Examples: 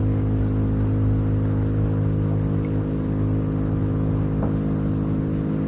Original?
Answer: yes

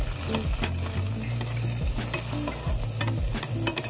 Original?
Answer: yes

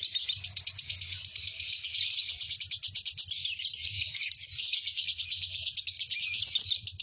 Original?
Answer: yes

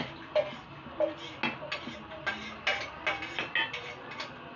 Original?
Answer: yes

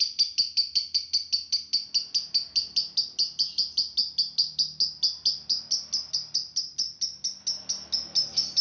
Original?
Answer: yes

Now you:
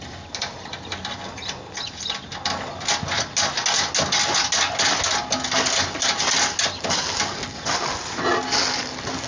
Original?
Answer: yes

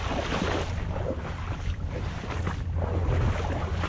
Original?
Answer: yes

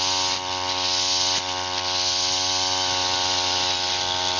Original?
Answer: yes